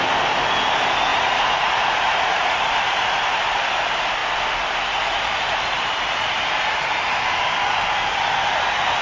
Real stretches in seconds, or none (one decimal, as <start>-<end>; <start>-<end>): 0.0-1.1; 2.6-9.0